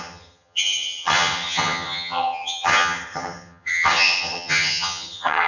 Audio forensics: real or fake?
fake